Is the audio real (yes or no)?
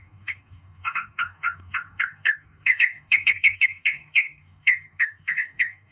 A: no